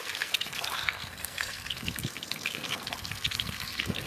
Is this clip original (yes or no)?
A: no